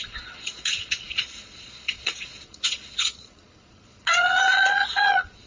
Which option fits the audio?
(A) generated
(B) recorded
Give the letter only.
A